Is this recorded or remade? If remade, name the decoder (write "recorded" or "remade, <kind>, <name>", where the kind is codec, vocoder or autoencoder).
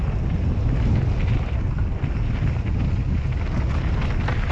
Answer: recorded